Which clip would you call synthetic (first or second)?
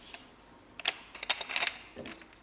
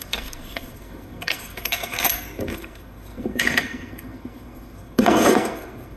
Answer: second